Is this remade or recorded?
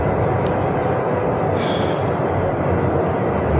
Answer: recorded